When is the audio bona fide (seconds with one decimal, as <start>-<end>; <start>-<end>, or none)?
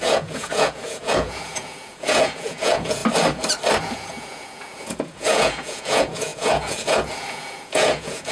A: 3.0-3.8